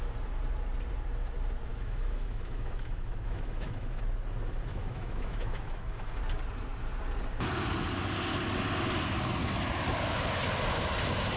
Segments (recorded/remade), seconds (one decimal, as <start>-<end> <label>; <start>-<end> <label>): 0.0-1.7 recorded; 1.7-4.0 remade; 4.0-4.7 recorded; 4.7-6.2 remade; 6.2-11.4 recorded